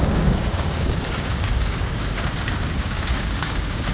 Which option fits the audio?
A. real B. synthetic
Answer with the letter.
B